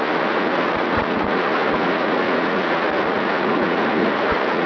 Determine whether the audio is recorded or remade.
remade